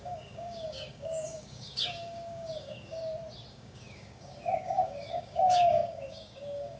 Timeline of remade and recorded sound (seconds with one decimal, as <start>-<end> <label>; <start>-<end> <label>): 0.0-3.0 remade; 3.0-3.5 recorded; 3.5-6.8 remade